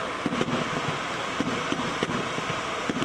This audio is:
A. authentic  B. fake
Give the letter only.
A